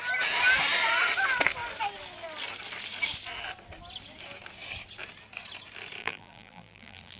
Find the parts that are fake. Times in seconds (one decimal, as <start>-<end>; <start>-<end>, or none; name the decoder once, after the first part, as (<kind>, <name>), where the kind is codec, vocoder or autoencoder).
6.0-7.2 (vocoder, BigVGAN v2)